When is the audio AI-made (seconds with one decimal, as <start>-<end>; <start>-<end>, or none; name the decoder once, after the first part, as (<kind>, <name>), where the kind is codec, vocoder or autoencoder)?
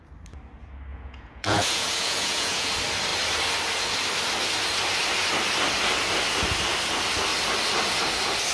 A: 0.9-2.7 (vocoder, Vocos)